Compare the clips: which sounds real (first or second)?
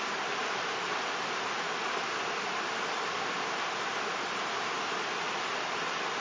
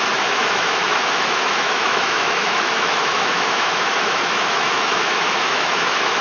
first